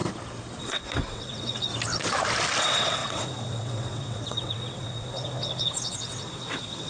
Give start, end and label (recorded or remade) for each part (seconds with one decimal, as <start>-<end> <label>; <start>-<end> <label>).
0.0-0.6 recorded; 0.6-1.7 remade; 1.7-2.6 recorded; 2.6-6.9 remade